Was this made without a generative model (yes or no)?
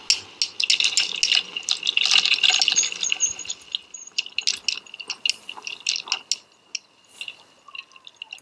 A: yes